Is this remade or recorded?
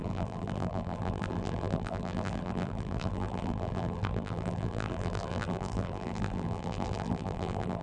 remade